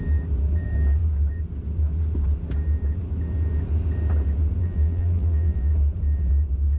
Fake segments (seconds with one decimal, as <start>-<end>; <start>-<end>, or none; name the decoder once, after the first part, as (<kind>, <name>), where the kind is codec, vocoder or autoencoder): 4.6-5.7 (vocoder, BigVGAN v2)